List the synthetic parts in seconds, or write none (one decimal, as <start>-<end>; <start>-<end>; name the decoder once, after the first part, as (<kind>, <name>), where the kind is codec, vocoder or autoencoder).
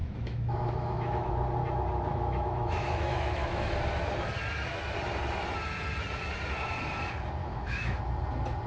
0.0-1.3 (autoencoder, DAC-VAE); 2.1-3.7; 7.4-8.0